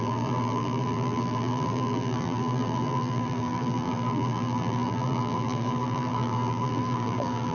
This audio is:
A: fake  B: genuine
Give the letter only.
A